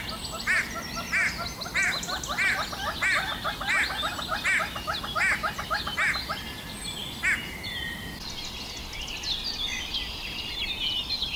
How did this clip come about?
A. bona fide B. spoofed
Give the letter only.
A